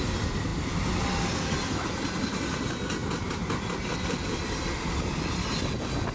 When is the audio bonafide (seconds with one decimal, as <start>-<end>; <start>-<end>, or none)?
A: 0.0-6.1